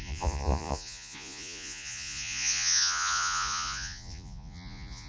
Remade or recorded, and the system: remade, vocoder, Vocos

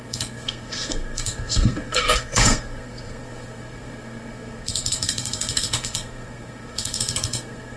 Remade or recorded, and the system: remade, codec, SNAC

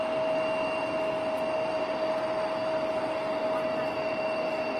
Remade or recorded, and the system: recorded